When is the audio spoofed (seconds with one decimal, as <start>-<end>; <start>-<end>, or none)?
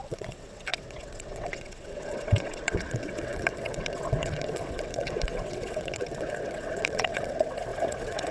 0.0-8.3